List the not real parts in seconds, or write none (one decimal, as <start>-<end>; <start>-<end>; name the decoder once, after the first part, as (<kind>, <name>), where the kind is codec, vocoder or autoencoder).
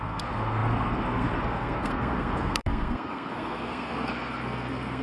0.0-5.0 (codec, SNAC)